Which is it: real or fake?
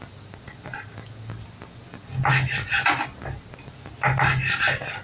real